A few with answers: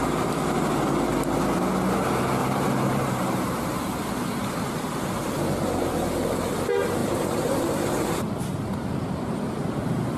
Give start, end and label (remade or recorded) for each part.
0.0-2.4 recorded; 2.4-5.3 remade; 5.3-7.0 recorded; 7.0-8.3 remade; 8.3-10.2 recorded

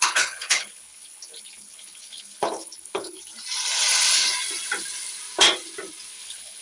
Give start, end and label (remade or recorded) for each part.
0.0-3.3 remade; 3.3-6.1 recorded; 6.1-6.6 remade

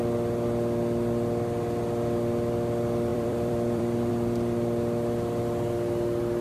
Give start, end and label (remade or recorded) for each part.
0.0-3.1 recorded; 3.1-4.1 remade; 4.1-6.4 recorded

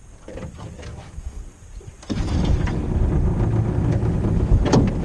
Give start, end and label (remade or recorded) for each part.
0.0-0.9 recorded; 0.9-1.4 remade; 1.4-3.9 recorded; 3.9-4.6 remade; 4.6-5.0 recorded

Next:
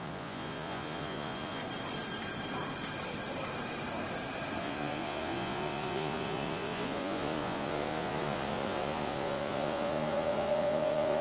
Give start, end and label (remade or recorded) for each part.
0.0-1.6 remade; 1.6-4.6 recorded; 4.6-11.2 remade